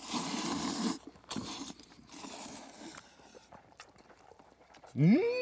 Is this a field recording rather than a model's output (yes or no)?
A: no